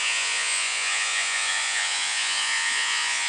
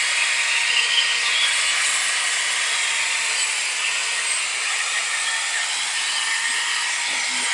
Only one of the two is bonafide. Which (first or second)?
second